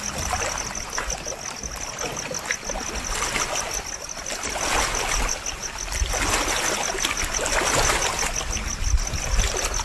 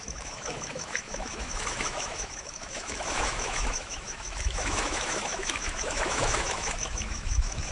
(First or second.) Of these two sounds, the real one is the first